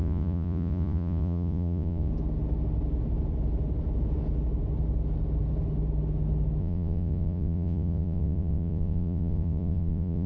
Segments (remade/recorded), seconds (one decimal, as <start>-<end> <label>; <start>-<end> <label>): 0.0-2.1 remade; 2.1-6.6 recorded; 6.6-10.3 remade

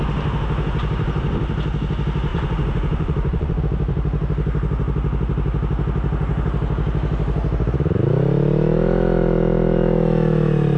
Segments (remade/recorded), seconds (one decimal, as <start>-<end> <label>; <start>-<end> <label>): 0.0-2.3 recorded; 2.3-3.6 remade; 3.6-10.8 recorded

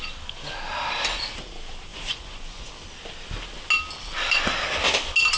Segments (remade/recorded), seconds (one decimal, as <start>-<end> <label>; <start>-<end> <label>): 0.0-1.9 recorded; 1.9-2.7 remade; 2.7-5.4 recorded

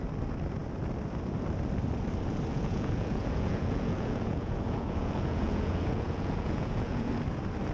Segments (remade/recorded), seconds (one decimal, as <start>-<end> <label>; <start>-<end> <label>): 0.0-2.5 recorded; 2.5-7.1 remade; 7.1-7.7 recorded

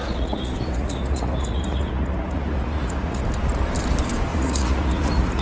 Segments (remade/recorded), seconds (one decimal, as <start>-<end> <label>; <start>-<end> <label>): 0.0-3.2 remade; 3.2-4.3 recorded; 4.3-5.4 remade

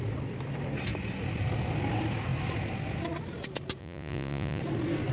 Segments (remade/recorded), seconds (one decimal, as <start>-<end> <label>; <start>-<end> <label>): 0.0-3.8 recorded; 3.8-4.6 remade; 4.6-5.1 recorded

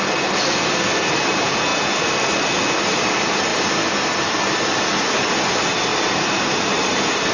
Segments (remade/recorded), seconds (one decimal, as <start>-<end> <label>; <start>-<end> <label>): 0.0-7.3 recorded